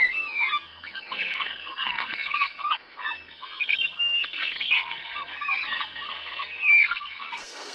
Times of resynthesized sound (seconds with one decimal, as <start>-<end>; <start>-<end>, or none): 0.0-7.7